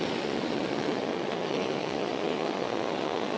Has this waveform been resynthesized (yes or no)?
yes